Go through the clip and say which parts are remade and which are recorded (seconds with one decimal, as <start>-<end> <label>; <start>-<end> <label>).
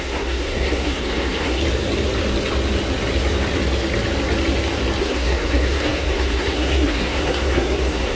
0.0-1.6 remade; 1.6-5.0 recorded; 5.0-8.2 remade